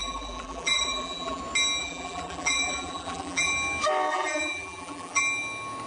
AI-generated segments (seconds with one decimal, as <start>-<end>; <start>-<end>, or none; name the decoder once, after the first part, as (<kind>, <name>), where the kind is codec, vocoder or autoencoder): 0.0-1.4 (vocoder, BigVGAN v2); 1.8-3.5; 4.1-5.2